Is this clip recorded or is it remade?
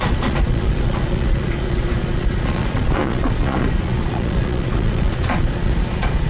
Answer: remade